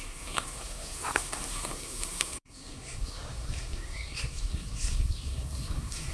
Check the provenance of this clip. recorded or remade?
remade